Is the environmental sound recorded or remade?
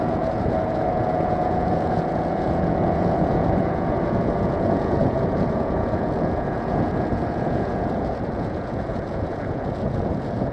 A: remade